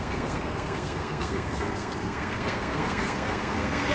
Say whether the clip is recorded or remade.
remade